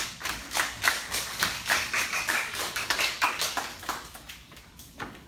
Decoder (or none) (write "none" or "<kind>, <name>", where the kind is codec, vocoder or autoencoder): codec, DAC